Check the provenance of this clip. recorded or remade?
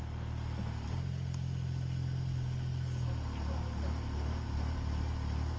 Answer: recorded